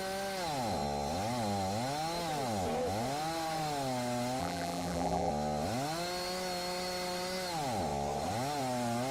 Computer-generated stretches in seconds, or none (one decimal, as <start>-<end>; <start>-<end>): 4.4-5.3